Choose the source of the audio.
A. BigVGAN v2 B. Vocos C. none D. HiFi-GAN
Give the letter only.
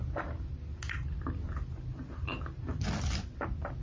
C